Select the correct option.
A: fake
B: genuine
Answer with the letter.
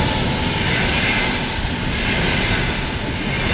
B